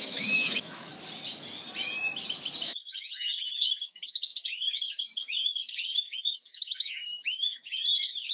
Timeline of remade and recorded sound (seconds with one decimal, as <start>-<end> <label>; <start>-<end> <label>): 0.0-0.9 remade; 0.9-2.6 recorded; 2.6-8.3 remade